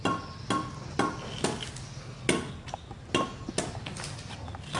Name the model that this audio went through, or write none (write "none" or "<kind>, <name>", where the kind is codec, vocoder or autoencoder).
none